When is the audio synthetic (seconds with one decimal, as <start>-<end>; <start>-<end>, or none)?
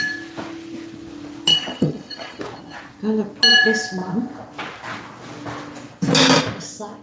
1.5-2.4